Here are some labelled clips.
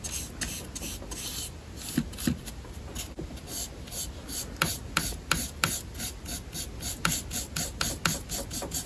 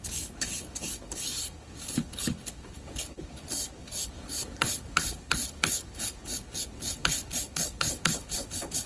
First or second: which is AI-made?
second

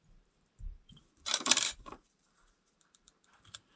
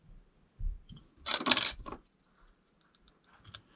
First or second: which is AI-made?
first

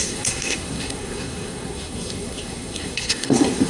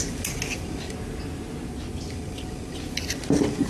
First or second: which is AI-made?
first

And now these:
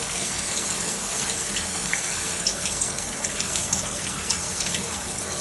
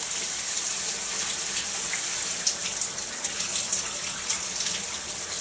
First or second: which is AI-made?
first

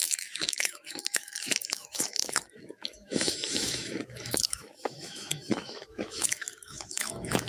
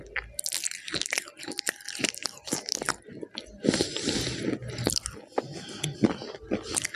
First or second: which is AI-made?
first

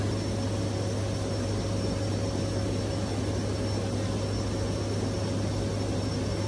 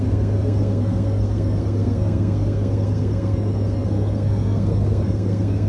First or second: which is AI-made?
second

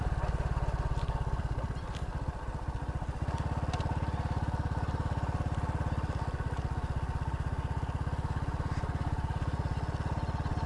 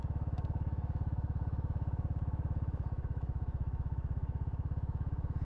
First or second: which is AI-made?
second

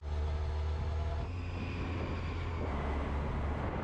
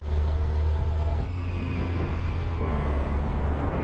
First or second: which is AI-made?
second